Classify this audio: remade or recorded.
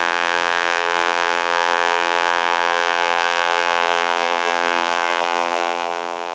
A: remade